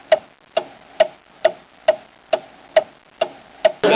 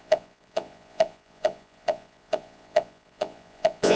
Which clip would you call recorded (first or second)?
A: first